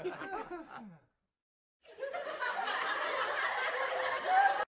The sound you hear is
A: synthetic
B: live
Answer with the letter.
B